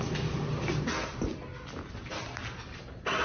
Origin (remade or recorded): recorded